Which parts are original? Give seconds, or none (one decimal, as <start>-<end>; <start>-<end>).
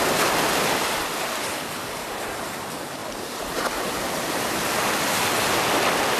0.0-1.4; 2.2-3.0; 4.4-6.2